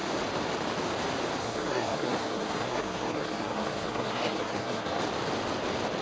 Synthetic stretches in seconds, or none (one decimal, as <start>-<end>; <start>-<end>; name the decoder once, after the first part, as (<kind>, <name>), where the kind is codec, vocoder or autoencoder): 1.4-5.0 (codec, SNAC)